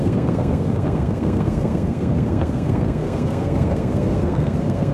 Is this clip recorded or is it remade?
remade